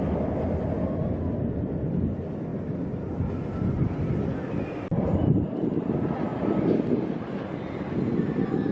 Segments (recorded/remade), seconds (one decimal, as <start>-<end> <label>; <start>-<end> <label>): 0.0-6.3 recorded; 6.3-7.4 remade; 7.4-8.7 recorded